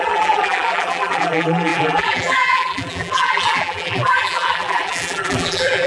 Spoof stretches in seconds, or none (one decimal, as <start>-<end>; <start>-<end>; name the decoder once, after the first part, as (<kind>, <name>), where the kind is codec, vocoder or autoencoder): 0.0-5.9 (vocoder, BigVGAN v2)